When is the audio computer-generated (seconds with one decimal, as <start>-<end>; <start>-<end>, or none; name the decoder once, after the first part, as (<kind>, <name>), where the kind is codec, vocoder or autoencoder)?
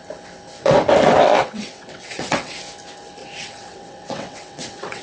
1.4-2.5 (vocoder, WaveNeXt); 3.2-5.0